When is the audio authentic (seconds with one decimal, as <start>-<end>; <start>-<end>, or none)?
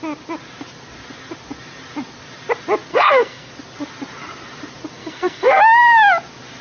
0.0-2.9; 3.5-5.0; 5.6-6.6